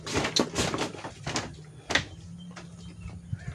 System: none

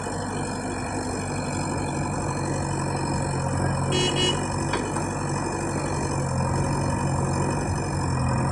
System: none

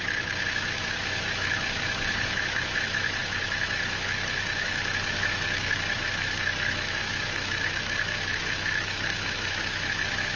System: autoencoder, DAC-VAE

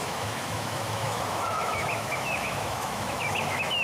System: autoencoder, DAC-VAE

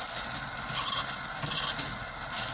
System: none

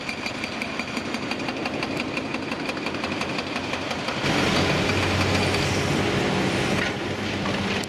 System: none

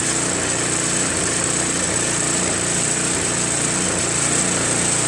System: none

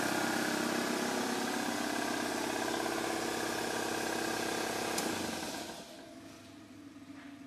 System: none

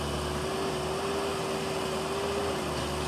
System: none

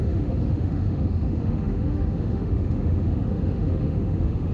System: autoencoder, DAC-VAE